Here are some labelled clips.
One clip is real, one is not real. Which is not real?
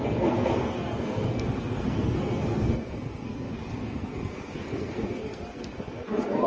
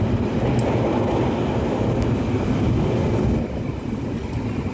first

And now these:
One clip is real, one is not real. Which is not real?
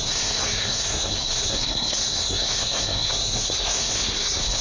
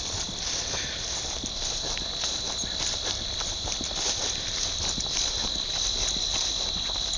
first